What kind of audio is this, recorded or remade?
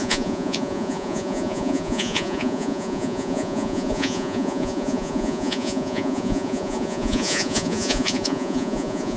remade